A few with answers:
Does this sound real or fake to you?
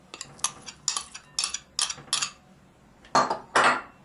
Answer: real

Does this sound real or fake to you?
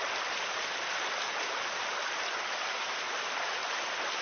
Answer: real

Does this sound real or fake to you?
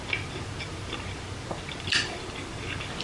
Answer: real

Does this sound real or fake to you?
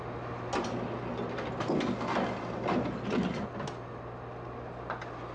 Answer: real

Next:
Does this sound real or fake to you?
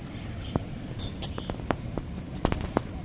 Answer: real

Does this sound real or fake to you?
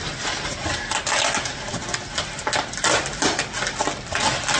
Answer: real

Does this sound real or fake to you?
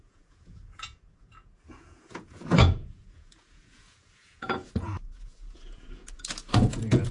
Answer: fake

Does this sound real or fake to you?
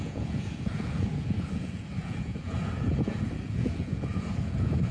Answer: fake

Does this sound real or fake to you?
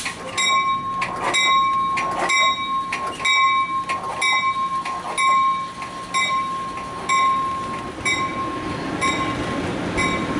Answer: real